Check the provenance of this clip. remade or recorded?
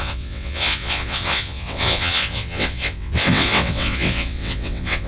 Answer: remade